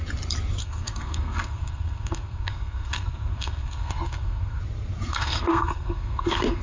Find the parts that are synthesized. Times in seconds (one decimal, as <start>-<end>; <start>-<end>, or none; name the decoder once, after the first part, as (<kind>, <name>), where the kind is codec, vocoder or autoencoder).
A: 0.6-4.6 (codec, SNAC); 5.1-6.6